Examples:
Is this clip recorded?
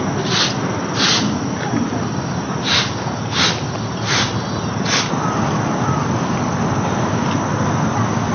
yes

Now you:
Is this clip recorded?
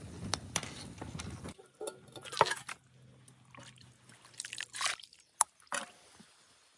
yes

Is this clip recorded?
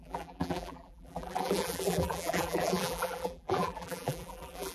no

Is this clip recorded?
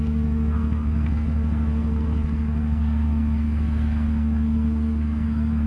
no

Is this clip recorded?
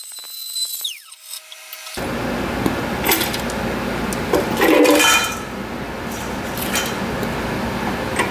yes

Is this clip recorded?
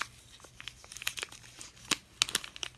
yes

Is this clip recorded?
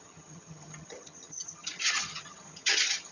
no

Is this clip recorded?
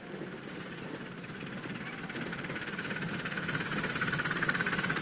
yes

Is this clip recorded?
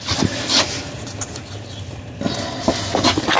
yes